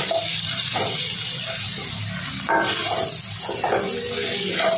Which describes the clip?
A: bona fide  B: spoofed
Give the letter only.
A